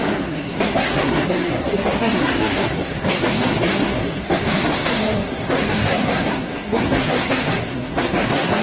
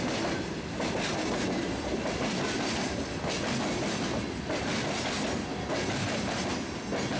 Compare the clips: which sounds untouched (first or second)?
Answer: second